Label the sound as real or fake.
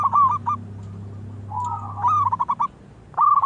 real